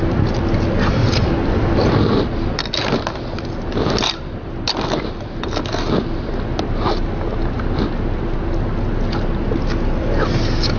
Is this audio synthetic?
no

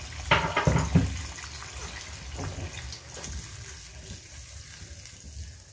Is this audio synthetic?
no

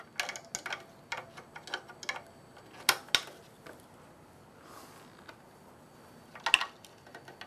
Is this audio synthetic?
no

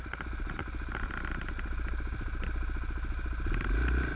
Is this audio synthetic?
no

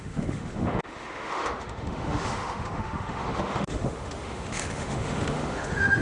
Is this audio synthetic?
yes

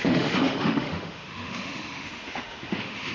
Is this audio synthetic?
yes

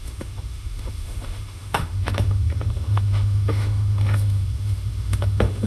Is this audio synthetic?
yes